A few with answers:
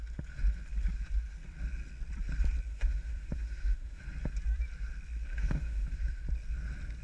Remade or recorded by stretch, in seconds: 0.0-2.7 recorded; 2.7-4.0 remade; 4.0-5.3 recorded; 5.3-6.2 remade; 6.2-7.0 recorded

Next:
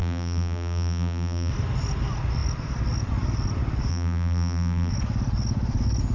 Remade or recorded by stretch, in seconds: 0.0-1.5 remade; 1.5-3.9 recorded; 3.9-4.9 remade; 4.9-6.1 recorded